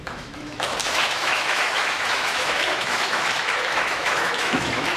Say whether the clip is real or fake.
fake